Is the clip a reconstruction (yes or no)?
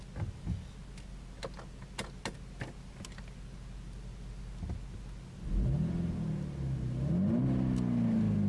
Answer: no